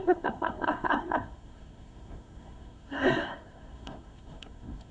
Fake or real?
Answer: fake